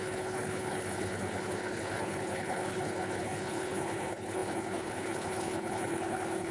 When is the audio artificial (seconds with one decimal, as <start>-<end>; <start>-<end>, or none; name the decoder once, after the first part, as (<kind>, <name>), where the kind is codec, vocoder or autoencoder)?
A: 0.0-6.5 (codec, HILCodec)